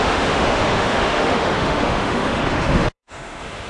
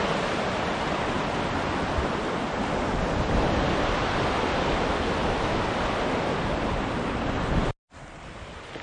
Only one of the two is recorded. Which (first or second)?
second